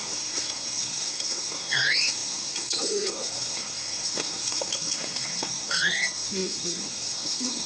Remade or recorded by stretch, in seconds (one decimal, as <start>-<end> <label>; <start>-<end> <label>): 0.0-7.7 remade